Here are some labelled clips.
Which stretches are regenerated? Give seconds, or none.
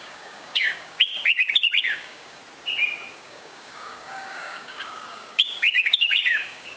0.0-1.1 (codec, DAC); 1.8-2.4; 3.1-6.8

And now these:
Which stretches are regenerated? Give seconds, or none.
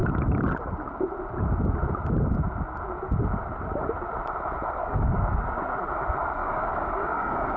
4.8-5.3 (codec, DAC); 6.4-7.6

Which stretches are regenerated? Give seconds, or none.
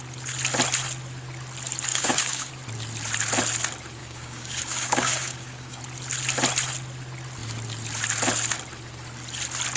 1.9-2.5 (codec, DAC); 4.0-5.8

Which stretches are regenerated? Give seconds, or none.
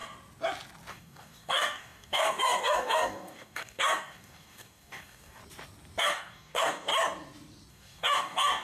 0.9-5.4 (codec, DAC); 6.0-6.9; 7.7-8.6